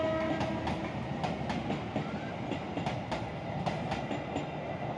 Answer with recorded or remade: recorded